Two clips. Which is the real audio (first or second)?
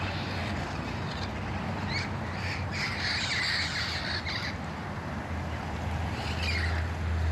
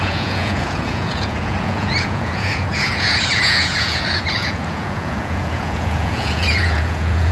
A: first